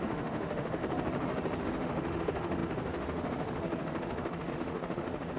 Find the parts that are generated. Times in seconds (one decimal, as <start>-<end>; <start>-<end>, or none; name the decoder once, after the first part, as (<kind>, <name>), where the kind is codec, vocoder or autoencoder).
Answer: 0.0-0.8 (autoencoder, DAC-VAE); 1.6-5.4